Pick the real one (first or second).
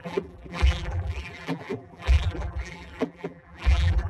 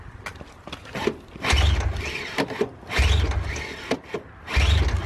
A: second